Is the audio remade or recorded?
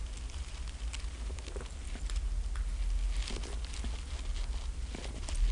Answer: recorded